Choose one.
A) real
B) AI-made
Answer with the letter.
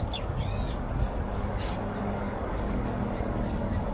B